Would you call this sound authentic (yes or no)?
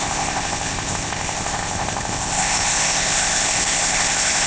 no